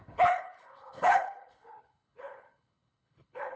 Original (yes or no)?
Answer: no